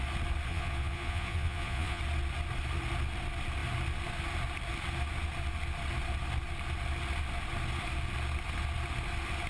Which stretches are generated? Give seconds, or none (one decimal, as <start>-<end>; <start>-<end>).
0.5-2.0